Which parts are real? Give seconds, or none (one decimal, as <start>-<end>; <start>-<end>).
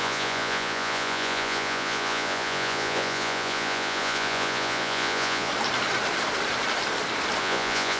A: 5.5-7.4